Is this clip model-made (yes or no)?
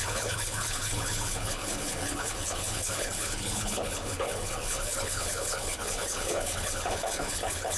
yes